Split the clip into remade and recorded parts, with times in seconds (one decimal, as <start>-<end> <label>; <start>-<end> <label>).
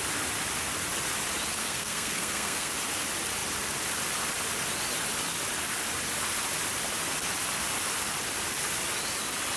0.0-1.6 recorded; 1.6-2.7 remade; 2.7-9.6 recorded